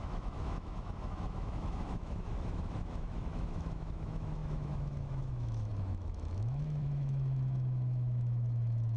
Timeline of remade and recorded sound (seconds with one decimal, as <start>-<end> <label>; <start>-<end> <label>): 0.0-9.0 remade